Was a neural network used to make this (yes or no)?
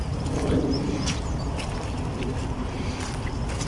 no